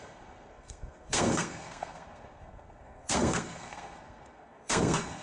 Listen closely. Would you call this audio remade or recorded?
remade